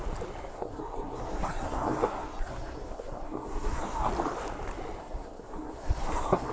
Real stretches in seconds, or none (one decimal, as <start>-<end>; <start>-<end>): 0.0-0.5; 4.1-5.0